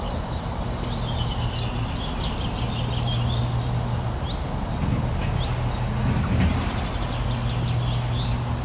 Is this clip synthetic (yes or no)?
no